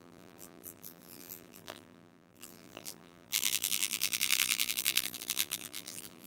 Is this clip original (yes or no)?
no